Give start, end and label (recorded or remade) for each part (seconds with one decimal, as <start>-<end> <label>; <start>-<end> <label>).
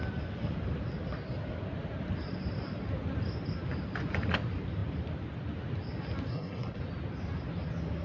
0.0-6.3 recorded; 6.3-6.8 remade; 6.8-8.0 recorded